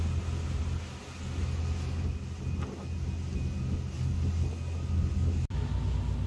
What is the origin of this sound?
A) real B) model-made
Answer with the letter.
A